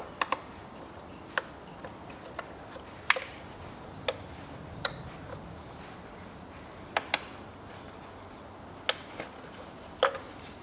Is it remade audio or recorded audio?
recorded